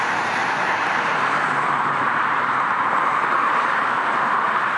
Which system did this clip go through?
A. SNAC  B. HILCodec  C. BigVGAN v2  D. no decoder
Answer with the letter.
C